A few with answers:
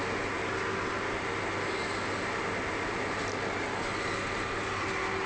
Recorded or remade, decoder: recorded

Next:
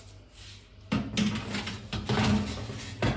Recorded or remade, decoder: recorded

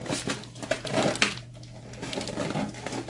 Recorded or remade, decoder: recorded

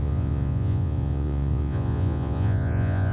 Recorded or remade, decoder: remade, vocoder, Vocos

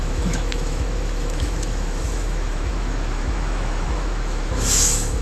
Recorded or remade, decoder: remade, autoencoder, DAC-VAE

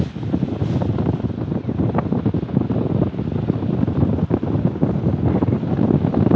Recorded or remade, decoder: recorded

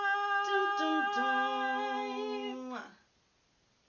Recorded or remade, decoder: recorded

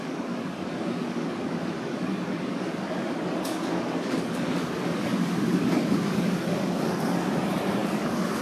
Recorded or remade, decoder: remade, codec, DAC